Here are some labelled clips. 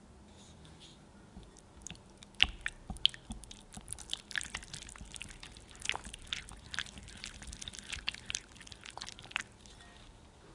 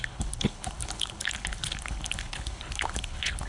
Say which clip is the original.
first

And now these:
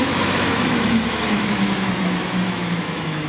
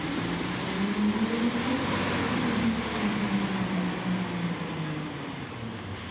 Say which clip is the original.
second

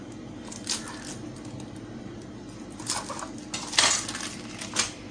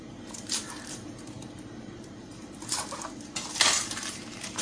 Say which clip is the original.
first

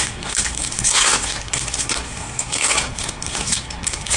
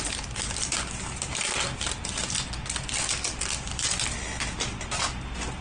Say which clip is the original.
second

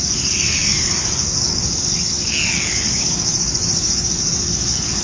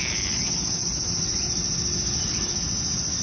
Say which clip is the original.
second